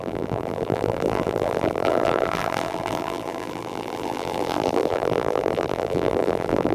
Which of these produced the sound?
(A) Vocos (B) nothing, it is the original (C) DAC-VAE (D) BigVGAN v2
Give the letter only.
D